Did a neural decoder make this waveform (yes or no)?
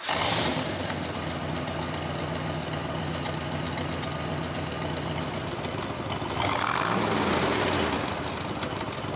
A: no